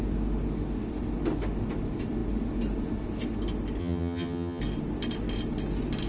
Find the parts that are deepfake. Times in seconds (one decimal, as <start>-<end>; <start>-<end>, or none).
3.8-4.6